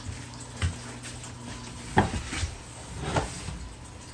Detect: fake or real real